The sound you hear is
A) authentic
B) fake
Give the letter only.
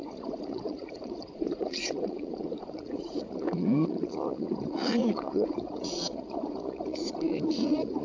B